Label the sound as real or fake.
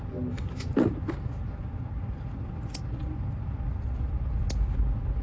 real